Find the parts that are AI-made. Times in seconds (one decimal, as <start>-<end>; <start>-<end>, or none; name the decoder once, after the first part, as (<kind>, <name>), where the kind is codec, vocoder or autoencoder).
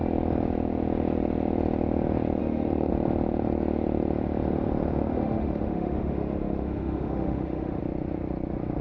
2.4-2.9 (autoencoder, DAC-VAE); 5.1-7.8